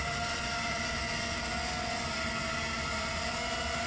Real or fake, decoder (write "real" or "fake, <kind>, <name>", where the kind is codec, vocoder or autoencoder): real